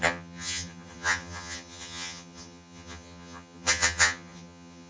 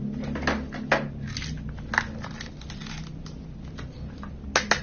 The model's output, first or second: first